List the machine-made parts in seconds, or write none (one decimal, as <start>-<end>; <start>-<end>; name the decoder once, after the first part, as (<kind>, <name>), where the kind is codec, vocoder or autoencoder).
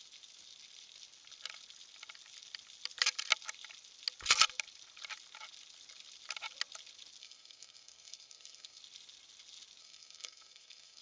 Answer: 7.2-8.8 (codec, SNAC); 9.8-11.0